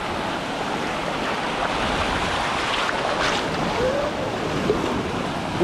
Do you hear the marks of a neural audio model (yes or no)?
no